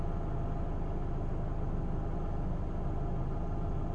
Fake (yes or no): no